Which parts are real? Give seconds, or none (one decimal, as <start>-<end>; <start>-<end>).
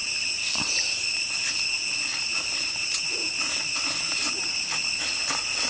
1.3-2.1; 5.0-5.7